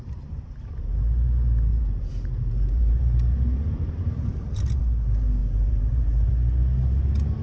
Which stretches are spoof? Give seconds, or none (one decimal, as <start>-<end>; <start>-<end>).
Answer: 1.7-4.8; 5.4-6.3